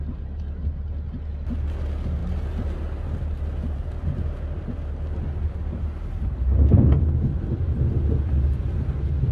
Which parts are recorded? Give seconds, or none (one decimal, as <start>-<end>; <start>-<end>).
0.0-9.3

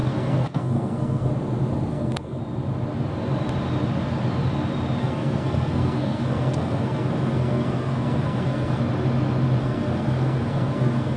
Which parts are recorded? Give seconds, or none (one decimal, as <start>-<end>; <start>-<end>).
1.3-1.9; 2.4-5.0; 8.8-9.6

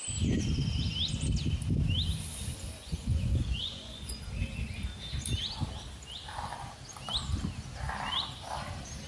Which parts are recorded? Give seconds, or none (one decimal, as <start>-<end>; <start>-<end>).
0.0-2.8; 4.2-9.1

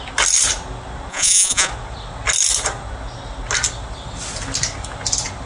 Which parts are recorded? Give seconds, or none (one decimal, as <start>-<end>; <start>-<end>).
0.0-1.1; 1.7-5.5

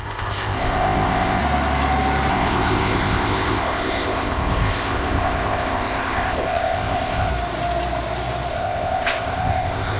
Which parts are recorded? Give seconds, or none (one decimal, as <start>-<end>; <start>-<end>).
1.4-2.3; 7.3-8.5